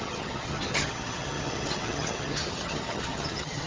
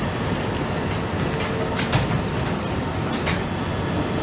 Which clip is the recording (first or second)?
second